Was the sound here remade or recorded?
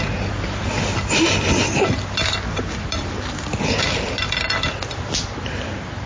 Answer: recorded